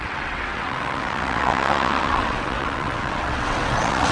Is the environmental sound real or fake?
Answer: fake